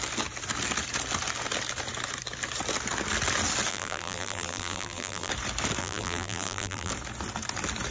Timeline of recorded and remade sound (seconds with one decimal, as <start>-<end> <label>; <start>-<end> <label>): 0.0-3.7 recorded; 3.7-5.3 remade; 5.3-5.8 recorded; 5.8-6.9 remade; 6.9-7.9 recorded